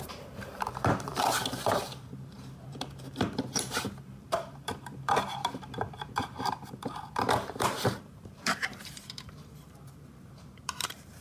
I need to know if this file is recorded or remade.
remade